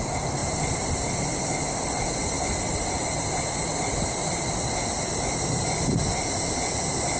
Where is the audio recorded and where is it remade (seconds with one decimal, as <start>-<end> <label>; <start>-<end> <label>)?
0.0-7.2 recorded